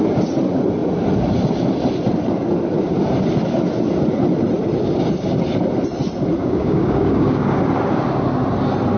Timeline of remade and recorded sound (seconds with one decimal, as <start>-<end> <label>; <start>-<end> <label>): 0.0-6.4 recorded; 6.4-7.6 remade; 7.6-9.0 recorded